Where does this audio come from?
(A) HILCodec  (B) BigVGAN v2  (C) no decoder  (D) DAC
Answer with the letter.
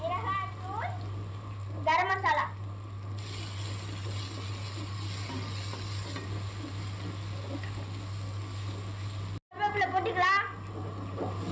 C